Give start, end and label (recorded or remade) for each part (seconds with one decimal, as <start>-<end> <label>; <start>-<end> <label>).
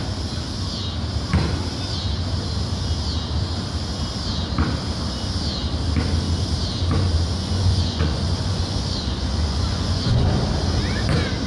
0.0-7.4 recorded; 7.4-10.3 remade; 10.3-11.5 recorded